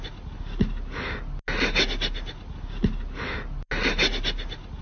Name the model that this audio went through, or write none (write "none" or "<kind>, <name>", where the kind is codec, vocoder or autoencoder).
none